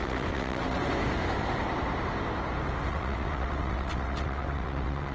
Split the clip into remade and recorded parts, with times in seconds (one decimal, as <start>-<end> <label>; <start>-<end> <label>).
0.0-0.8 remade; 0.8-2.9 recorded; 2.9-5.1 remade